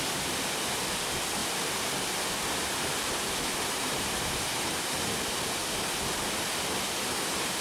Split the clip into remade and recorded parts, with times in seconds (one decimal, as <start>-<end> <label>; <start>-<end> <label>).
0.0-1.4 recorded; 1.4-1.9 remade; 1.9-2.6 recorded; 2.6-4.5 remade; 4.5-7.6 recorded